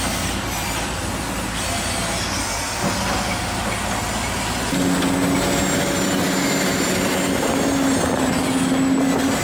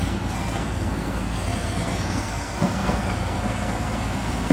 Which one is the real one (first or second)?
first